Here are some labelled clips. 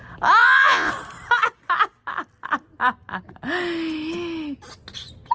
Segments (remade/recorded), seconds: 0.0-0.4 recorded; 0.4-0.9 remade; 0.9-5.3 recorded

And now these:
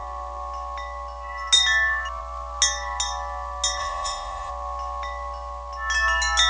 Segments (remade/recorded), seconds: 0.0-3.8 recorded; 3.8-4.5 remade; 4.5-6.5 recorded